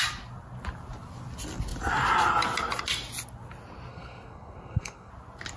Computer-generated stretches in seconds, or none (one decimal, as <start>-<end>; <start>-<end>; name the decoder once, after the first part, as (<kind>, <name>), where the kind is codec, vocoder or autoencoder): 3.9-5.1 (codec, SNAC)